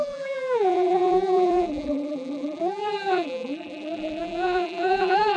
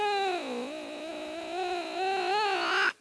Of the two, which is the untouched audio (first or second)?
second